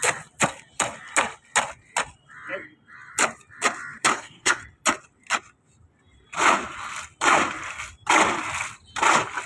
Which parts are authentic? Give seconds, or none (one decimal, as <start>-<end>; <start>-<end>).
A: 0.0-4.1; 4.6-9.5